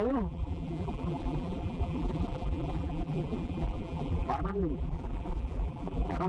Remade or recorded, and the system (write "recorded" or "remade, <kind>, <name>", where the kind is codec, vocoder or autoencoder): remade, vocoder, BigVGAN v2